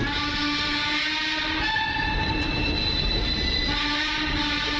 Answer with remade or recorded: remade